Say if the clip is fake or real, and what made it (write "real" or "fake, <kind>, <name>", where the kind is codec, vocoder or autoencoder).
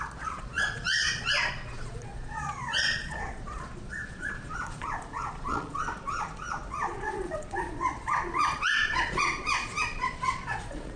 fake, vocoder, Vocos